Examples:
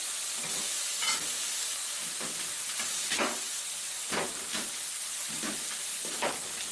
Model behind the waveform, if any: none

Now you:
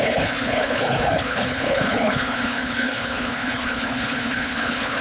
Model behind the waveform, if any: codec, HILCodec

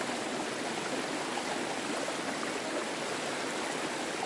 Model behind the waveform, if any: none